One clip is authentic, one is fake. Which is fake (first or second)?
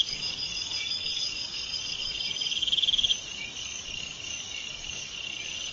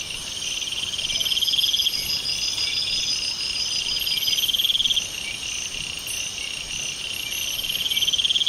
first